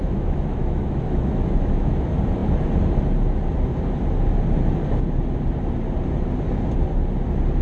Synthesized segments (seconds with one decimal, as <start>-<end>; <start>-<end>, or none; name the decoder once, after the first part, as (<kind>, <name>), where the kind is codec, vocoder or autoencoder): 0.0-1.9 (autoencoder, DAC-VAE)